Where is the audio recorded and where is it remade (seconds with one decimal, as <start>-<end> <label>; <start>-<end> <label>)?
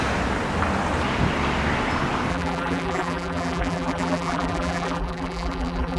0.0-2.3 recorded; 2.3-6.0 remade